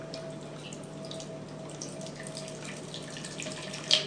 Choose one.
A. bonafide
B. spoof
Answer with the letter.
A